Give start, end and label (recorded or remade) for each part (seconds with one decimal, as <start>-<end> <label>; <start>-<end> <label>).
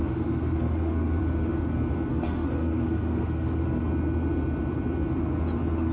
0.0-1.2 remade; 1.2-2.1 recorded; 2.1-3.8 remade; 3.8-5.9 recorded